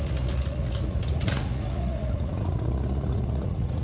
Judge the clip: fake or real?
fake